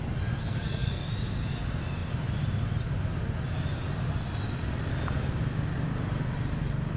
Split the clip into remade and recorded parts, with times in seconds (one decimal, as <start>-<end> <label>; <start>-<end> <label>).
0.0-0.4 recorded; 0.4-1.1 remade; 1.1-7.0 recorded

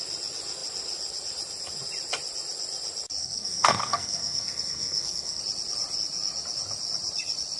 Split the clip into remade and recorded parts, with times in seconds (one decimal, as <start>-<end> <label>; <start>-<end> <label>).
0.0-3.2 recorded; 3.2-5.4 remade; 5.4-7.6 recorded

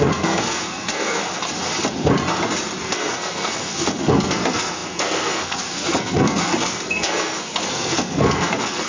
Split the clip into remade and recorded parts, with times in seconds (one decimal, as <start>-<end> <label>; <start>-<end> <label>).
0.0-1.2 remade; 1.2-2.8 recorded; 2.8-8.9 remade

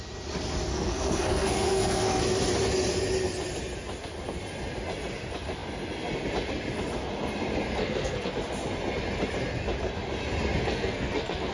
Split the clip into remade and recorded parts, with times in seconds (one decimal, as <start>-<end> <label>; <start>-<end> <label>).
0.0-0.7 recorded; 0.7-2.2 remade; 2.2-7.8 recorded; 7.8-8.3 remade; 8.3-10.6 recorded; 10.6-11.5 remade

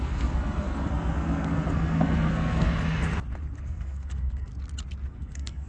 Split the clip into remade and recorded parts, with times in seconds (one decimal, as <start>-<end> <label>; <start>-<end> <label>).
0.0-2.7 remade; 2.7-3.6 recorded; 3.6-4.5 remade; 4.5-5.1 recorded; 5.1-5.7 remade

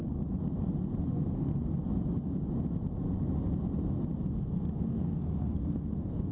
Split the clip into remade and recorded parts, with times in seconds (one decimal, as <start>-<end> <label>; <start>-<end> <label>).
0.0-1.0 recorded; 1.0-1.5 remade; 1.5-4.4 recorded; 4.4-6.3 remade

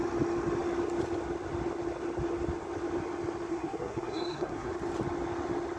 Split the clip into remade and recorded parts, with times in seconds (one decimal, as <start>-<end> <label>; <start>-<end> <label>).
0.0-3.5 recorded; 3.5-4.7 remade; 4.7-5.8 recorded